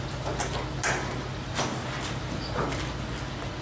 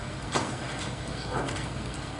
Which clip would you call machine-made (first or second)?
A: second